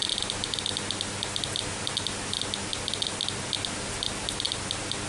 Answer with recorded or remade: recorded